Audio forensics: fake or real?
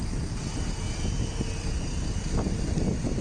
real